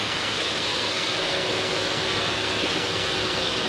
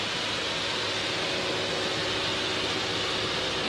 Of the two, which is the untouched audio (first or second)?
second